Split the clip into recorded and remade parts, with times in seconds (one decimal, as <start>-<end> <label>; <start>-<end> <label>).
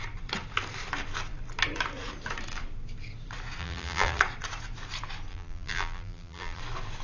0.0-3.6 recorded; 3.6-4.2 remade; 4.2-5.3 recorded; 5.3-6.6 remade; 6.6-7.0 recorded